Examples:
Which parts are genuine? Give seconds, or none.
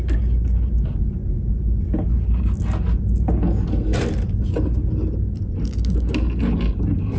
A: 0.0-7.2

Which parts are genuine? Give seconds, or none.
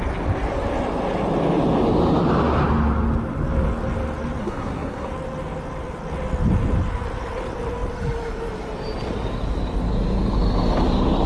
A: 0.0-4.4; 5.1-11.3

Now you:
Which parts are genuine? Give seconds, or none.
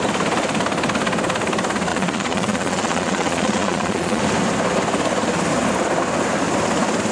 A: 0.0-1.9; 4.2-7.1